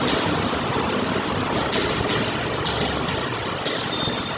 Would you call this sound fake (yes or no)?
no